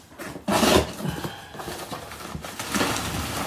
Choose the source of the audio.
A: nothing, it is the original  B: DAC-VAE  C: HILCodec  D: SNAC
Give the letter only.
A